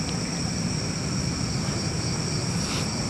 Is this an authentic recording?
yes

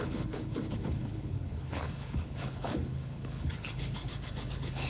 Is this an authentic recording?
no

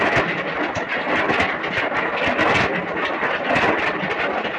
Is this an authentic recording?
yes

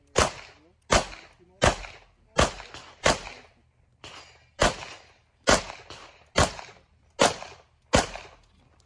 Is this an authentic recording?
yes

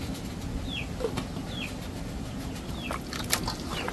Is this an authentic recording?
yes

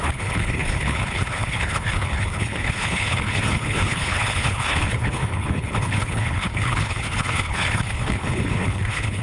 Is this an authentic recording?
no